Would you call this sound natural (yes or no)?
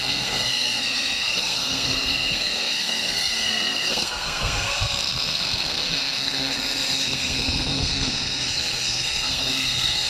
no